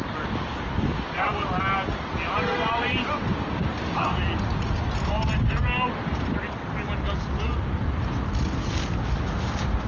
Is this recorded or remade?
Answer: recorded